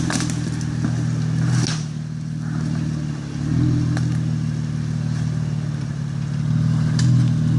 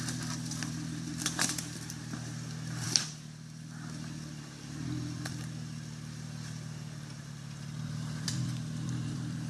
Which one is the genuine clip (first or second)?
first